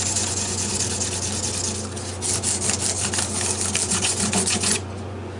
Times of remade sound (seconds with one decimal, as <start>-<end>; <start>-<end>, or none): 0.0-0.7; 3.9-5.4